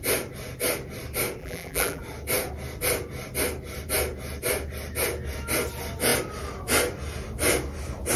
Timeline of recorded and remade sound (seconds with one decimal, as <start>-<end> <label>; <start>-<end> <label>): 0.0-1.4 recorded; 1.4-2.0 remade; 2.0-8.2 recorded